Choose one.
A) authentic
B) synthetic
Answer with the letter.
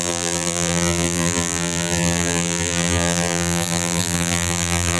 B